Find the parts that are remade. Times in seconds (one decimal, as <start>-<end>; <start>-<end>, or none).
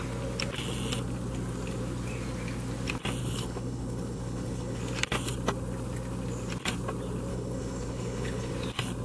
3.2-4.8; 7.3-8.5